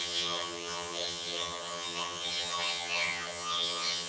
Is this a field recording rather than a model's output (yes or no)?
no